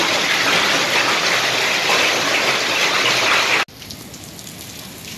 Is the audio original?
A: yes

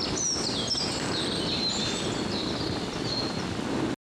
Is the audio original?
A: yes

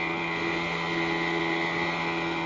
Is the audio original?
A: yes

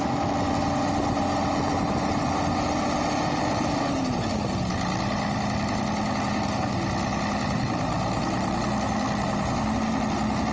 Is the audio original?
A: yes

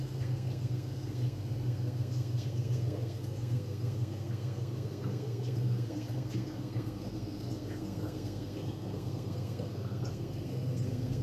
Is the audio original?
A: no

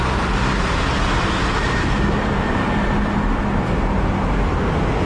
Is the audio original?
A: yes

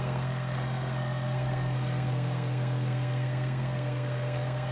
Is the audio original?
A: no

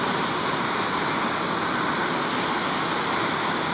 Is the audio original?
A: yes